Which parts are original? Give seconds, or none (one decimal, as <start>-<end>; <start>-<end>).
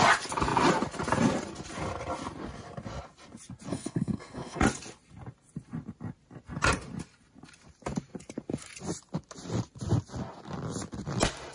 0.0-3.7; 4.6-11.5